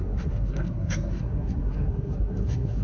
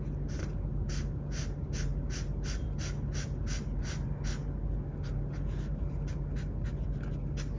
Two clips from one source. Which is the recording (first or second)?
second